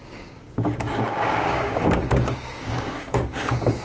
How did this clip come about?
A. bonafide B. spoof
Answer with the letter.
B